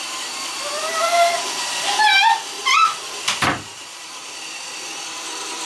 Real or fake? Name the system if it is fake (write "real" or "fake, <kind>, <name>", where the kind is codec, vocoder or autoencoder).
fake, vocoder, BigVGAN v2